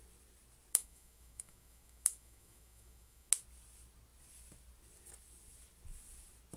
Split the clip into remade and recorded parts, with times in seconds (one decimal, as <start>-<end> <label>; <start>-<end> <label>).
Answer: 0.0-0.7 recorded; 0.7-3.3 remade; 3.3-6.6 recorded